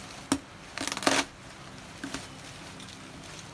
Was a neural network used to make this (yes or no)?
no